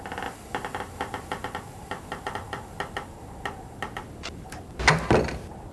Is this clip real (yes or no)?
yes